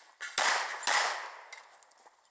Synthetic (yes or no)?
no